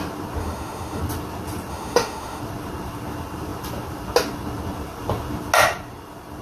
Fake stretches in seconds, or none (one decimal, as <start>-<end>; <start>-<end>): 0.4-1.0; 1.7-2.4